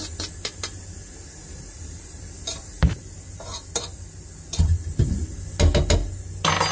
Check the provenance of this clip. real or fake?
real